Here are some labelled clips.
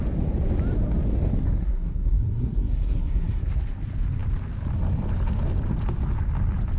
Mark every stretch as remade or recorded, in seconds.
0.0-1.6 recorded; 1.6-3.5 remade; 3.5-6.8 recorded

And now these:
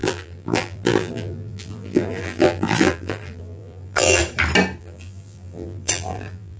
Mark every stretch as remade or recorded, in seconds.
0.0-4.2 remade; 4.2-4.8 recorded; 4.8-6.6 remade

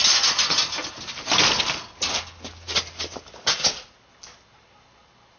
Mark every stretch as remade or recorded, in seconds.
0.0-5.4 recorded

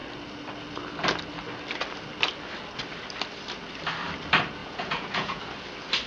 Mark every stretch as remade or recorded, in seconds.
0.0-4.6 recorded; 4.6-5.4 remade; 5.4-6.1 recorded

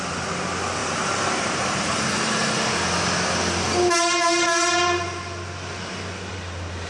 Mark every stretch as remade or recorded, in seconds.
0.0-0.8 recorded; 0.8-2.5 remade; 2.5-6.9 recorded